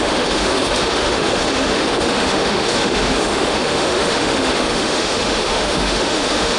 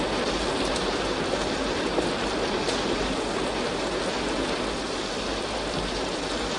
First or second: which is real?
second